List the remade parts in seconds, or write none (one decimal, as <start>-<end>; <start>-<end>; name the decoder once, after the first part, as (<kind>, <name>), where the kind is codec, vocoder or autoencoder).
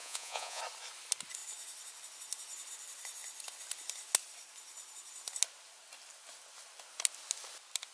0.0-0.6 (vocoder, Vocos)